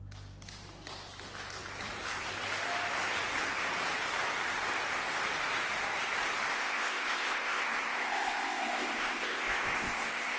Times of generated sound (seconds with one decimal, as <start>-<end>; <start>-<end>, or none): 6.5-10.4